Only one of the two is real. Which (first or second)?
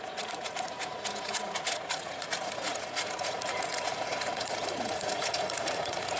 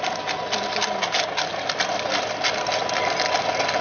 second